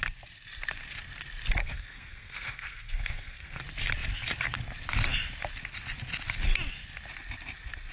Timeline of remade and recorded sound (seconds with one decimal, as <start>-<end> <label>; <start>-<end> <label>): 0.0-1.6 recorded; 1.6-3.6 remade; 3.6-7.9 recorded